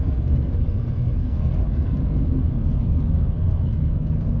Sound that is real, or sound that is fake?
fake